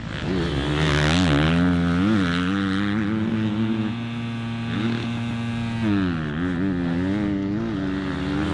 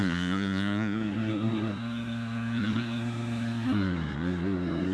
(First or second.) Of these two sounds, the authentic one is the first